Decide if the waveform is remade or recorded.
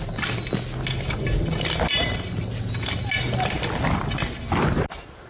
recorded